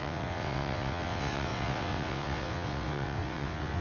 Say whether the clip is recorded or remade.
remade